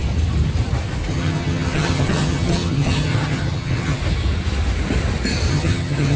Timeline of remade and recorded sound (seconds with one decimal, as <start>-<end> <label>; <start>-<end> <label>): 0.0-1.1 recorded; 1.1-4.0 remade; 4.0-5.5 recorded; 5.5-6.2 remade